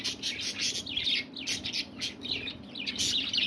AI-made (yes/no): no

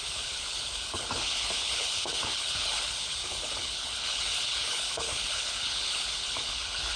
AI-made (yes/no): yes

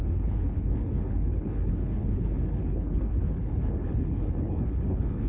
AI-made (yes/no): yes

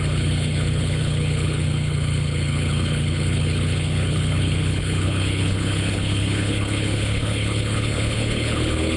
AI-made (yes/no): yes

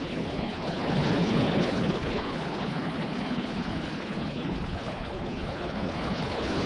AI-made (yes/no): yes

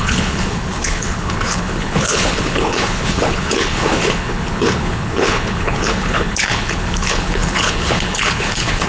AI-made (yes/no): yes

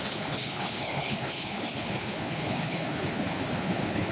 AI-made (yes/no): yes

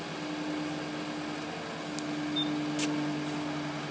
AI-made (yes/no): no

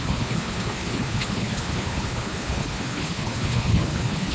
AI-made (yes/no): yes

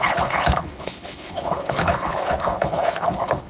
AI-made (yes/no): yes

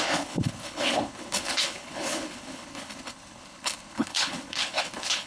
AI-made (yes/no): yes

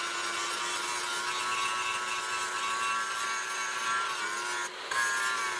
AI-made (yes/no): no